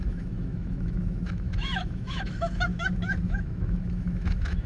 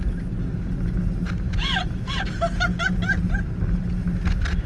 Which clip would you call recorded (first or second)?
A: second